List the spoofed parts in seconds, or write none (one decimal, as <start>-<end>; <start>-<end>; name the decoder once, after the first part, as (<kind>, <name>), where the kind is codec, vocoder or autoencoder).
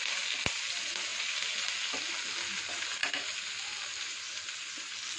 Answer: none